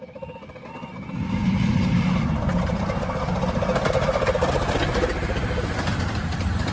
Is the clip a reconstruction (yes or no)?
no